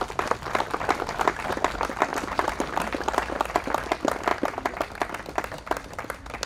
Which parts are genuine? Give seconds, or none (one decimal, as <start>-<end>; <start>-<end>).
0.0-2.1; 3.4-6.5